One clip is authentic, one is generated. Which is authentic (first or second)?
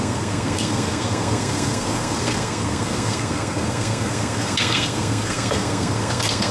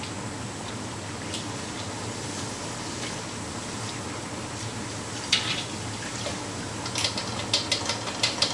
second